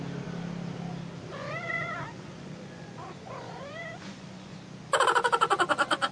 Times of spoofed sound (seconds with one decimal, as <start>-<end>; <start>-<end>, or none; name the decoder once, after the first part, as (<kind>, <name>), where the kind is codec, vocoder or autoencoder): 1.3-4.6 (vocoder, Vocos)